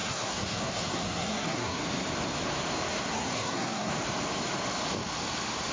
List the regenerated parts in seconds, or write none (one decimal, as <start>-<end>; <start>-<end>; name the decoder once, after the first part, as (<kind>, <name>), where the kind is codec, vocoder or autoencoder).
0.0-1.8 (codec, SNAC); 3.1-3.9